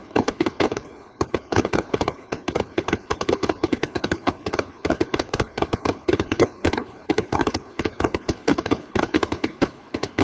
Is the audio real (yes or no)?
no